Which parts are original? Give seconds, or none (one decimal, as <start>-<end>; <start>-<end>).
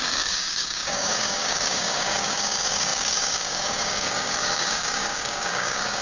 none